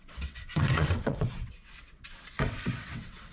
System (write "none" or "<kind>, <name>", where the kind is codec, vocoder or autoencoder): vocoder, WaveNeXt